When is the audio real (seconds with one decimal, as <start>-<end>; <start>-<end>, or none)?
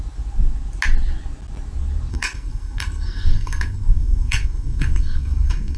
0.0-2.1